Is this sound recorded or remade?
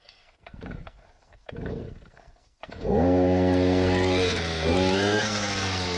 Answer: remade